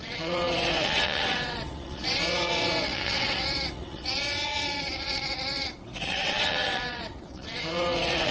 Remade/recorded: remade